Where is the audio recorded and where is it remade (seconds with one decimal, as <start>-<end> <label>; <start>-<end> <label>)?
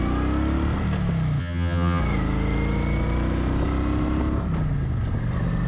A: 0.0-1.4 recorded; 1.4-2.0 remade; 2.0-5.7 recorded